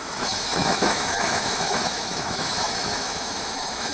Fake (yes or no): yes